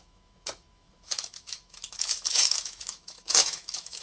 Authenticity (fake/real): fake